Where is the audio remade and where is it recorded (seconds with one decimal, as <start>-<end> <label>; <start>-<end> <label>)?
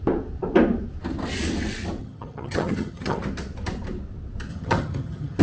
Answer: 0.0-2.0 recorded; 2.0-3.2 remade; 3.2-4.5 recorded; 4.5-5.4 remade